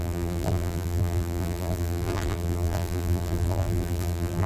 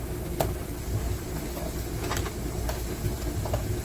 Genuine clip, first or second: second